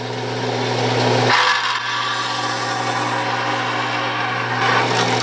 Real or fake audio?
real